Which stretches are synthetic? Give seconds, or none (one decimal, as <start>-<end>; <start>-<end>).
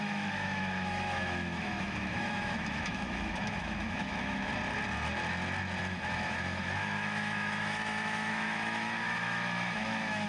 0.0-4.5; 5.8-10.3